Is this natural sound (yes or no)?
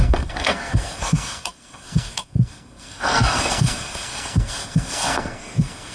no